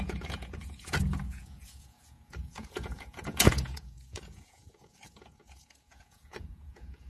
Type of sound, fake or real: fake